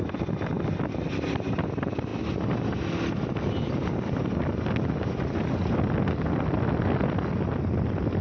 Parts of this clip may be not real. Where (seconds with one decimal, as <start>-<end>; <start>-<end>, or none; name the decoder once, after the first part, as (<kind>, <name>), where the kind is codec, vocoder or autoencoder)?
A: none